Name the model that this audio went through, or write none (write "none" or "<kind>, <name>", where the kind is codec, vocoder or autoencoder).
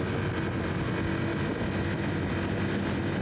none